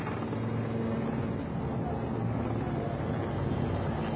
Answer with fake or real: real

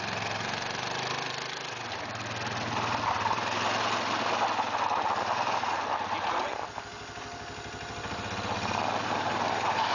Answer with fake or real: real